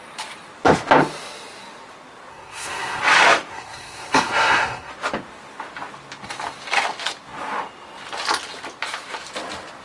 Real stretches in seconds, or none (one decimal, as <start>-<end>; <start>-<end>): 0.0-2.3; 3.0-3.5; 4.9-9.8